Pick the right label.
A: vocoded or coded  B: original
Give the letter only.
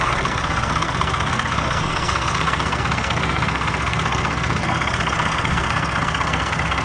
A